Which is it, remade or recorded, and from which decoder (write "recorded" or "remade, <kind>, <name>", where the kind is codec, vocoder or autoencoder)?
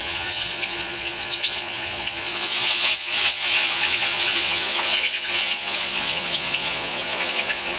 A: remade, vocoder, Vocos